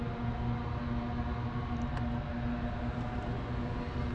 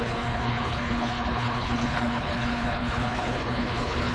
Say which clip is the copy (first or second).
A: second